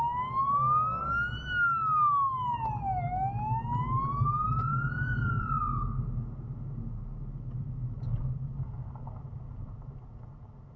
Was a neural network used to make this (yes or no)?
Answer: no